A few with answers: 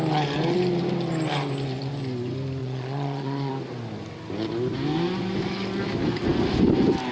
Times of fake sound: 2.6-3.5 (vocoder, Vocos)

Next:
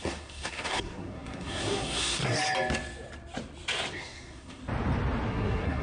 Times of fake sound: 0.0-2.2 (codec, SNAC); 3.9-4.6; 5.3-5.8

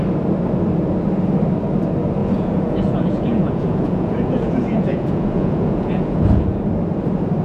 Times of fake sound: 2.2-6.6 (vocoder, Vocos)

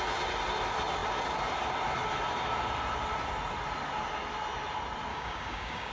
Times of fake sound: 5.1-5.9 (codec, DAC)